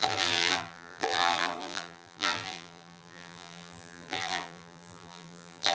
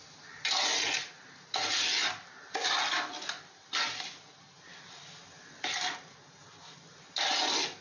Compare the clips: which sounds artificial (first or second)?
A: first